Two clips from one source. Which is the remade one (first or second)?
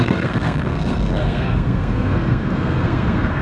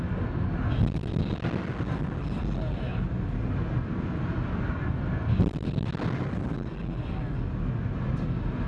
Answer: first